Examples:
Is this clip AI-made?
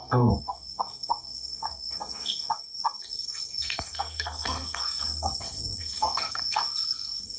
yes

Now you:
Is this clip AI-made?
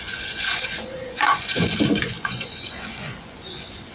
yes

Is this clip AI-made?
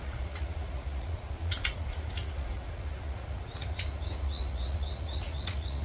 yes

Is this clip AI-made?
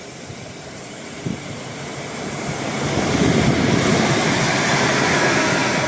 yes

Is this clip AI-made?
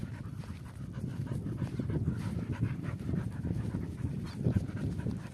yes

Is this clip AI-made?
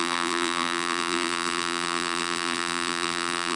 yes